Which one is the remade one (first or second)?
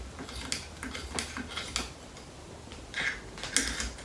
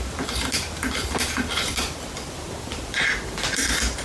second